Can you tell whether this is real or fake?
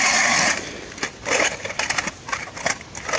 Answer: real